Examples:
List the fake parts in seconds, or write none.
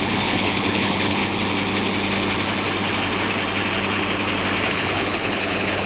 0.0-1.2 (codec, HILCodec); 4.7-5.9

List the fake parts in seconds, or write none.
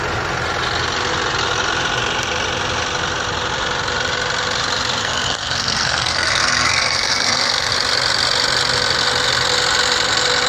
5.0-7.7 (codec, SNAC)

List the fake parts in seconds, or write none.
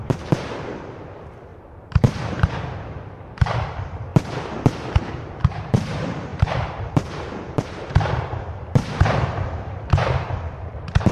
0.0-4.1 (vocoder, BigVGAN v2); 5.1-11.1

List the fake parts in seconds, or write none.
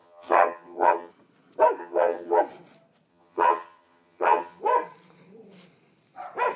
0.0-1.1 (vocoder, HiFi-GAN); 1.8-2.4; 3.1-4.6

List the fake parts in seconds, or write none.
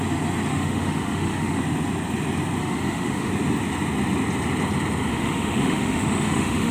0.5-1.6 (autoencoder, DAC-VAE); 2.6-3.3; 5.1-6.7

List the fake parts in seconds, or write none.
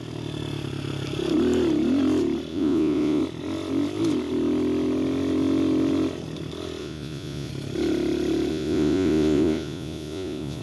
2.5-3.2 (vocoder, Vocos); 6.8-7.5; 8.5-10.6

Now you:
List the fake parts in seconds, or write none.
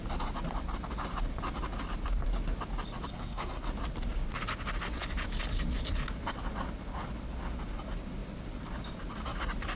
3.1-3.7 (codec, SNAC)